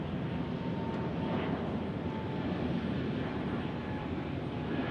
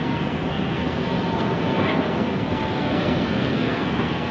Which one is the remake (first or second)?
second